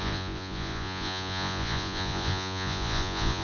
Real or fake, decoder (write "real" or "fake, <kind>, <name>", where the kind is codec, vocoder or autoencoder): fake, vocoder, Vocos